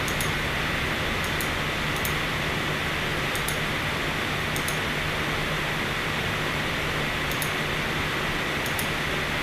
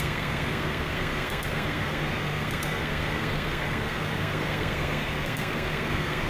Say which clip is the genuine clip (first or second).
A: first